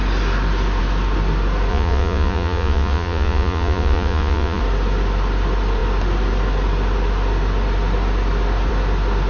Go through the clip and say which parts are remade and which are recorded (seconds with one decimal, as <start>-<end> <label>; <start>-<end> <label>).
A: 0.0-1.7 recorded; 1.7-4.6 remade; 4.6-9.3 recorded